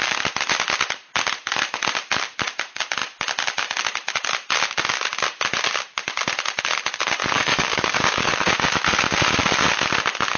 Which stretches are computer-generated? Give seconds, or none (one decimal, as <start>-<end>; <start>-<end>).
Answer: 7.2-8.3